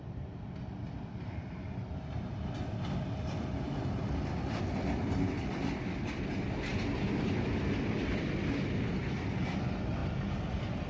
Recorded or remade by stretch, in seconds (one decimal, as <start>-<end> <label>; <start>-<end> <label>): 0.0-10.9 recorded

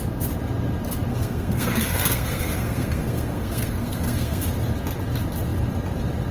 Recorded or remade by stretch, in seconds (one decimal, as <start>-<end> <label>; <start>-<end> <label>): 0.0-1.1 recorded; 1.1-4.5 remade; 4.5-6.3 recorded